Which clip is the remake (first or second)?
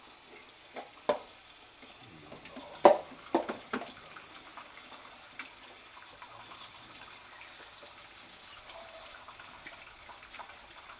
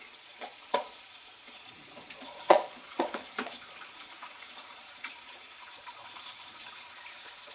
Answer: second